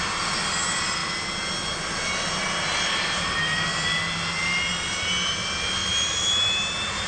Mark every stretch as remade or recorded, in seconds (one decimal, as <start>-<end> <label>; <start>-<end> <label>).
0.0-7.1 recorded